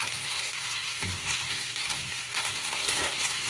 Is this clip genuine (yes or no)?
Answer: no